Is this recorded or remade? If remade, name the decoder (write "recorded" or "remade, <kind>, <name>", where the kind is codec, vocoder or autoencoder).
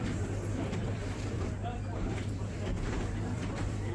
remade, vocoder, BigVGAN v2